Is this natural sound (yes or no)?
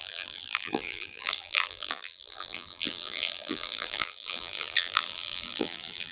no